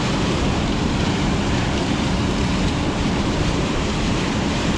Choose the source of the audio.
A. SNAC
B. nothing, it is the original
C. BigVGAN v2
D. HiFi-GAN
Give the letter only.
C